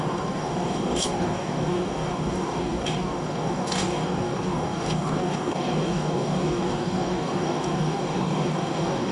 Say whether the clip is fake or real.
fake